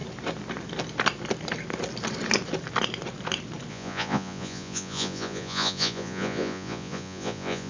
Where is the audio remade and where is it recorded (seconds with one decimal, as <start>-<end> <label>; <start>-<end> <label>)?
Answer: 0.0-3.7 recorded; 3.7-7.7 remade